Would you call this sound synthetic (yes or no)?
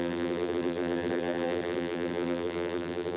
yes